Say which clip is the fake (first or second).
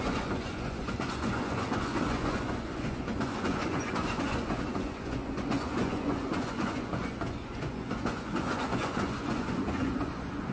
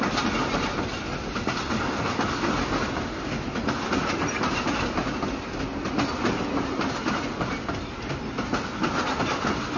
first